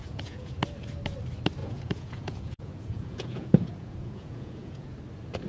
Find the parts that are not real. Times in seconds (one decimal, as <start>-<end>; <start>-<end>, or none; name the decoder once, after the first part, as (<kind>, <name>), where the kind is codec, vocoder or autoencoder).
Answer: 0.0-0.6 (vocoder, Vocos); 1.6-4.9